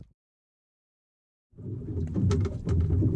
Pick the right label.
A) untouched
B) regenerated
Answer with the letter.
A